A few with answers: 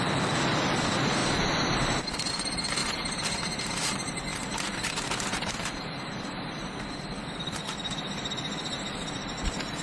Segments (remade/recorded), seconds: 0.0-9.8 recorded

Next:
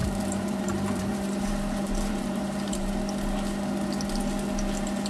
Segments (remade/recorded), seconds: 0.0-2.9 remade; 2.9-5.1 recorded

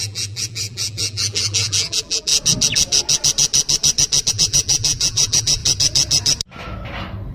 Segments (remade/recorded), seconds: 0.0-2.3 remade; 2.3-4.3 recorded; 4.3-5.6 remade; 5.6-7.3 recorded

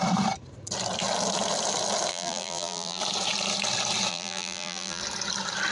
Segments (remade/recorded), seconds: 0.0-2.1 recorded; 2.1-3.0 remade; 3.0-4.1 recorded; 4.1-5.0 remade; 5.0-5.7 recorded

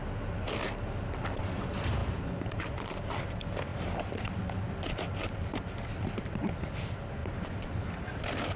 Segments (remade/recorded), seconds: 0.0-8.6 recorded

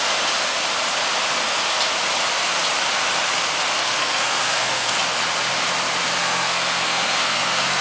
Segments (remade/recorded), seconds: 0.0-4.0 recorded; 4.0-4.9 remade; 4.9-6.2 recorded; 6.2-7.8 remade

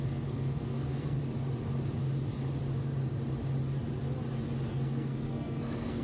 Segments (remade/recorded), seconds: 0.0-1.2 remade; 1.2-4.7 recorded; 4.7-6.0 remade

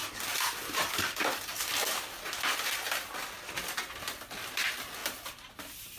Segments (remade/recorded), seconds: 0.0-1.9 remade; 1.9-5.0 recorded; 5.0-5.5 remade; 5.5-6.0 recorded